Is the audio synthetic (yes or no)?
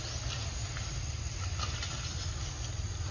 no